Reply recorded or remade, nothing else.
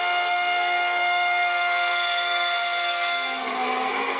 remade